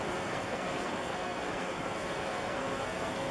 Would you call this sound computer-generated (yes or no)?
yes